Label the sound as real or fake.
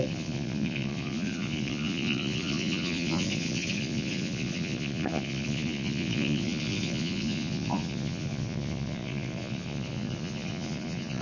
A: fake